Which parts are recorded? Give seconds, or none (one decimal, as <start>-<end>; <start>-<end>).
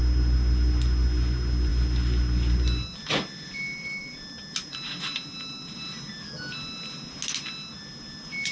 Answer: 0.0-8.5